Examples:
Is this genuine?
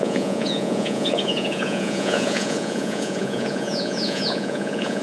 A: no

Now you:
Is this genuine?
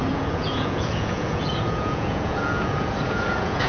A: no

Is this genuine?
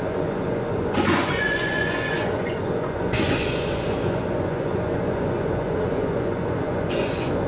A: no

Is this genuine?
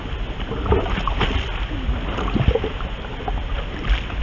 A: yes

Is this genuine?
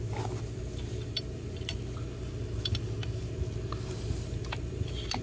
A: yes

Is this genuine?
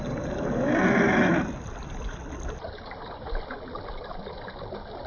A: yes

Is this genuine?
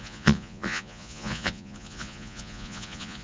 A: no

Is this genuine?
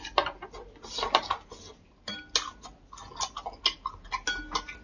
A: yes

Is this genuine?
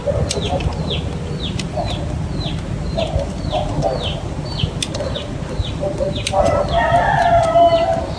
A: yes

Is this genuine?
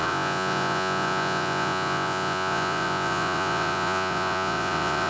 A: no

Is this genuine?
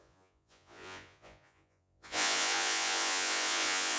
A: no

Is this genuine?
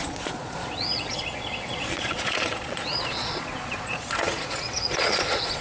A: no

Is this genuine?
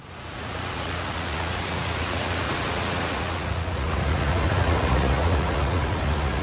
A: no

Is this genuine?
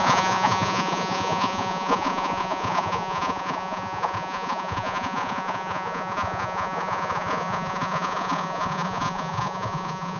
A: no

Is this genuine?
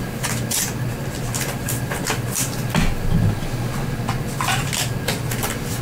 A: yes